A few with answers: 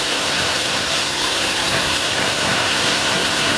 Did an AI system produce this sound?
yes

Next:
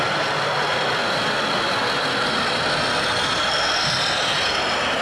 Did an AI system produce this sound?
no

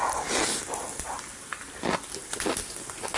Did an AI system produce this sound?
no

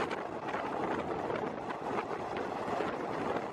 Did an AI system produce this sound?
no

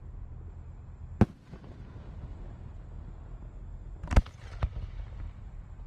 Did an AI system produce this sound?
no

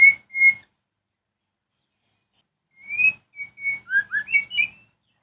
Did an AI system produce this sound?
no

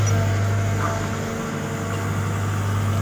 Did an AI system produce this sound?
no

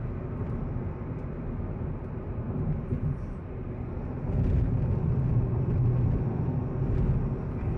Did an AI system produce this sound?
no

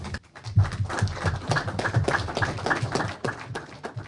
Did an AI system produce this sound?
no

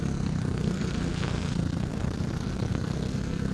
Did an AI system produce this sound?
yes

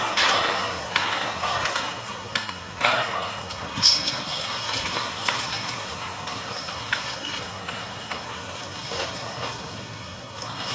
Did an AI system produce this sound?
yes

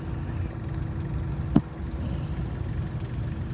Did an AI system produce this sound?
no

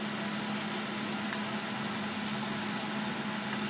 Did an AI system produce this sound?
no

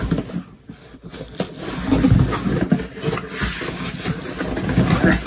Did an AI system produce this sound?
no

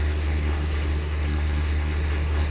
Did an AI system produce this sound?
yes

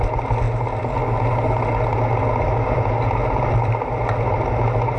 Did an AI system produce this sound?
no